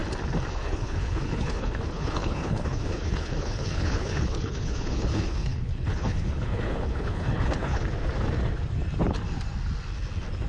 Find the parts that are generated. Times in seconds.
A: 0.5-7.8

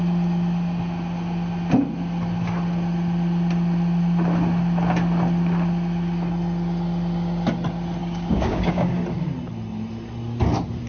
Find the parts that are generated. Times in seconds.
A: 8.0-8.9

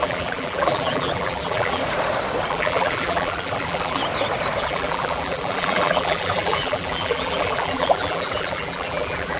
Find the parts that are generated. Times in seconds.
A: 0.0-1.8; 2.5-4.0; 4.6-9.4

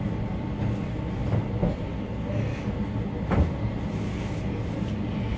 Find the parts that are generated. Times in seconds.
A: none

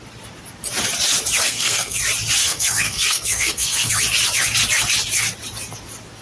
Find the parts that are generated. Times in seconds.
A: 1.4-2.0; 2.4-3.9